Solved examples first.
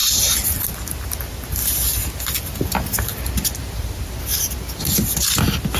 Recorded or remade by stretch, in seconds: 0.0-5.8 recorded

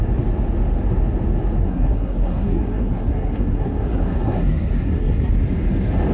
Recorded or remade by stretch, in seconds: 0.0-1.6 recorded; 1.6-5.3 remade; 5.3-6.1 recorded

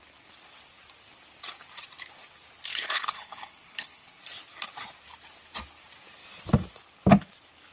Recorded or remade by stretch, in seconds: 0.0-2.7 recorded; 2.7-4.2 remade; 4.2-7.7 recorded

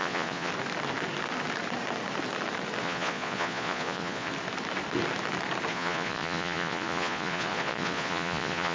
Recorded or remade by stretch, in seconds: 0.0-0.5 remade; 0.5-2.8 recorded; 2.8-4.3 remade; 4.3-5.7 recorded; 5.7-8.7 remade

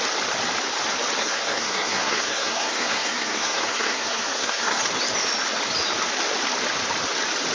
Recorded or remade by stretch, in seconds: 0.0-1.2 recorded; 1.2-4.8 remade; 4.8-7.5 recorded

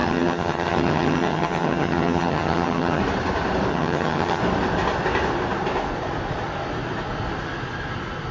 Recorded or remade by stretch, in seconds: 0.0-3.0 remade; 3.0-3.7 recorded; 3.7-4.4 remade; 4.4-8.3 recorded

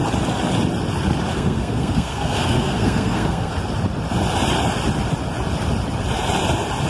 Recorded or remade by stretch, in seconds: 0.0-1.3 recorded; 1.3-3.5 remade; 3.5-6.9 recorded

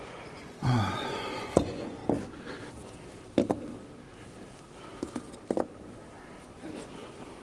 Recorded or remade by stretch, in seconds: 0.0-2.0 remade; 2.0-6.4 recorded; 6.4-7.4 remade